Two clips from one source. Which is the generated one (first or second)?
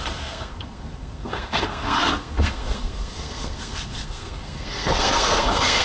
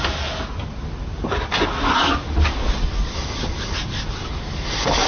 first